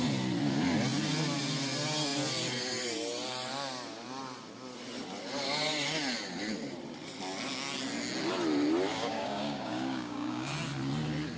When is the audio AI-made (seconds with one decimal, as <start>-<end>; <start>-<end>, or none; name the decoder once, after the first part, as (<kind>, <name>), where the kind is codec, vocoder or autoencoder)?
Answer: 8.9-10.5 (codec, DAC)